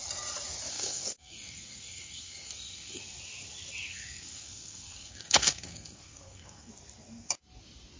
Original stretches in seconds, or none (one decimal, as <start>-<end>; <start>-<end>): 0.0-0.7; 3.0-3.9; 6.7-8.0